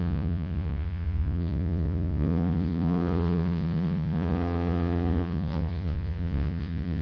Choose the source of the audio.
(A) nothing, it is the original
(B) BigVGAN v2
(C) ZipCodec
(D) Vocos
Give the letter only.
D